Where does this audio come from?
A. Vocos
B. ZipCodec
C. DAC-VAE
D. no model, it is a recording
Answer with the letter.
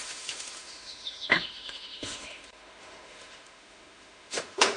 C